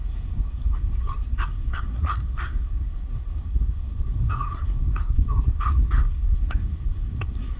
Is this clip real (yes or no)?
no